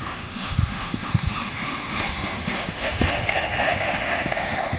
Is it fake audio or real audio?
fake